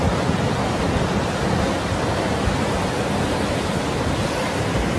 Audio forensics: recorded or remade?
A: recorded